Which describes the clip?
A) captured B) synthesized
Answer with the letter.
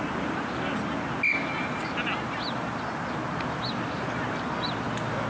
A